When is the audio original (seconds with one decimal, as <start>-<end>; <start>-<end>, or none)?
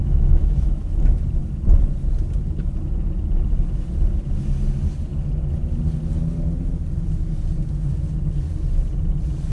0.8-9.5